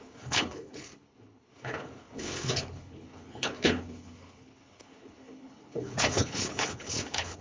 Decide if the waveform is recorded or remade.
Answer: remade